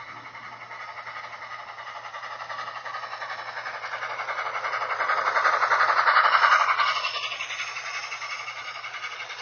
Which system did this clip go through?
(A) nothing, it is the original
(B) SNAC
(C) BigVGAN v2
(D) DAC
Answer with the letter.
A